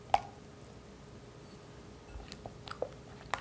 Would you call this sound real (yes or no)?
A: yes